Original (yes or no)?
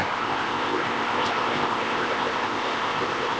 no